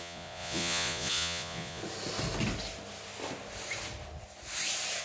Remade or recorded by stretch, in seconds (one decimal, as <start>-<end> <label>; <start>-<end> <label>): 0.0-1.8 remade; 1.8-5.0 recorded